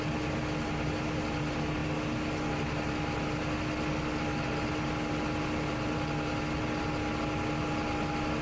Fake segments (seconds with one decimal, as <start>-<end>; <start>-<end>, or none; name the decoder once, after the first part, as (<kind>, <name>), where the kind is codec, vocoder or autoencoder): none